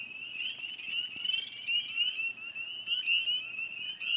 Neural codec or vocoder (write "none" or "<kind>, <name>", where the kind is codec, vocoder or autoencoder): none